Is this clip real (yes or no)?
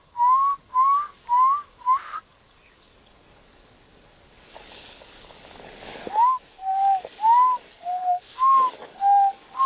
no